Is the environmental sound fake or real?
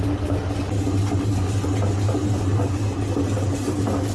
real